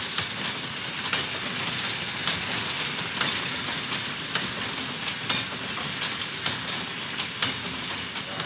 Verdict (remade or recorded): recorded